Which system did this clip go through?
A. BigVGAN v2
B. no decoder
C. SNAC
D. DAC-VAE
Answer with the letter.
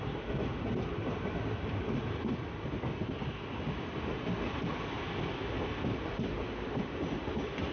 B